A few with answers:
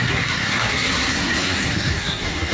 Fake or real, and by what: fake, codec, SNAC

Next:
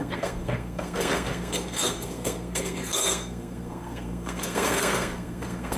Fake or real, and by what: fake, codec, SNAC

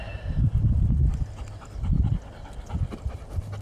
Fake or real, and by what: real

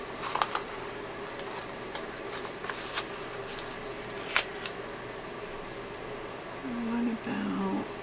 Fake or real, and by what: real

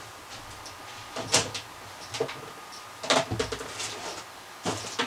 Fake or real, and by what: real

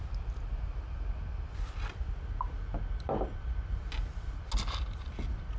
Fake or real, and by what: real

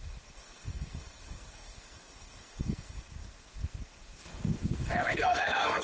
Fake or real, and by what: fake, codec, SNAC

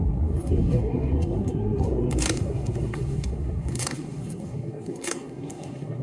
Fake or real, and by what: fake, codec, SNAC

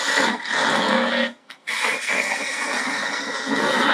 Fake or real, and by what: fake, codec, SNAC